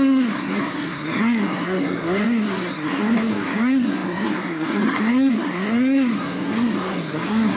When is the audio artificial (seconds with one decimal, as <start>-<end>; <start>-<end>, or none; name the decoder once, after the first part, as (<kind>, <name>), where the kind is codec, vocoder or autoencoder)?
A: 0.0-7.6 (codec, SNAC)